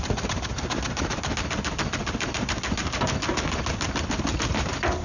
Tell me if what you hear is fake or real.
real